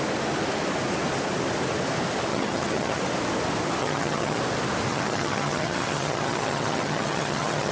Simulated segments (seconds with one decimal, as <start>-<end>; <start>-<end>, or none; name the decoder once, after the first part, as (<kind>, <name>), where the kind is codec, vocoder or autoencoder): 2.3-3.0 (vocoder, HiFi-GAN); 3.8-4.4; 4.9-7.7